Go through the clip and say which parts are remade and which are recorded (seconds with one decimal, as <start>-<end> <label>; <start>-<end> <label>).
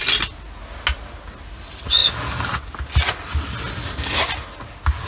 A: 0.0-5.1 recorded